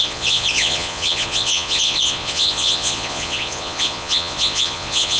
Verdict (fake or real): fake